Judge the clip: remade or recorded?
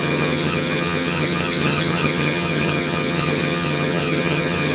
remade